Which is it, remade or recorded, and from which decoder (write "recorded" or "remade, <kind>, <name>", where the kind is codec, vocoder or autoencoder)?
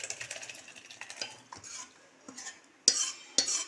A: recorded